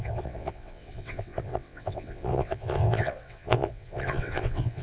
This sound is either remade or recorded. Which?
remade